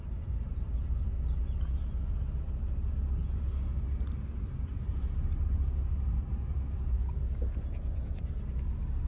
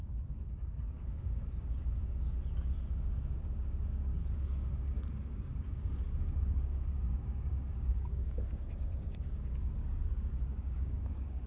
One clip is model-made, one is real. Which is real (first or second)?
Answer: first